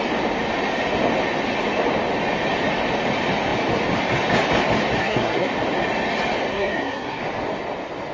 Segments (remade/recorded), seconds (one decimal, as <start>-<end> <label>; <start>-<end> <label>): 0.0-5.0 recorded; 5.0-5.5 remade; 5.5-6.5 recorded; 6.5-7.2 remade; 7.2-8.1 recorded